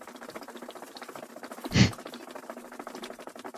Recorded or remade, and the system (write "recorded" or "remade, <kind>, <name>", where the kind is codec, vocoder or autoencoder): recorded